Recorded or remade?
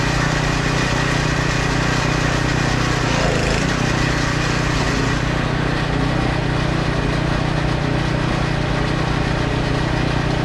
recorded